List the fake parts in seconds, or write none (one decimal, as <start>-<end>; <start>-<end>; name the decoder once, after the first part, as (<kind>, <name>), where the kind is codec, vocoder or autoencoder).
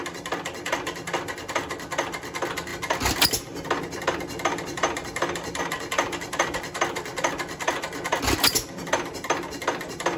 none